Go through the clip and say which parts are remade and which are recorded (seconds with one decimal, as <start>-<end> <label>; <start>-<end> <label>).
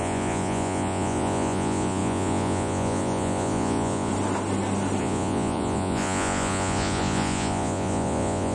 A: 0.0-4.1 remade; 4.1-5.0 recorded; 5.0-8.5 remade